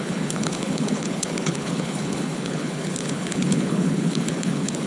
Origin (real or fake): fake